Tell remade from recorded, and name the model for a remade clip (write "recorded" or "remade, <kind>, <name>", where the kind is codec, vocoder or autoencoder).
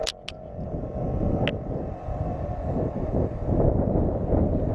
recorded